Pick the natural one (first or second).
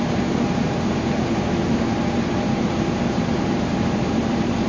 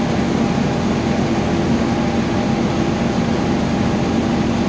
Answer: second